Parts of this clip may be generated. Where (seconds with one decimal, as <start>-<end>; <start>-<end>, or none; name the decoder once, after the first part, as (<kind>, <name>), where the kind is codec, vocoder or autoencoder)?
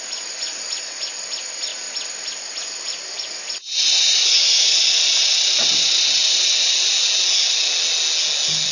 none